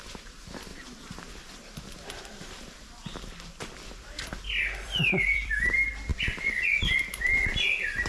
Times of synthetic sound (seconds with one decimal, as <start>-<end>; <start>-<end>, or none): 0.7-5.5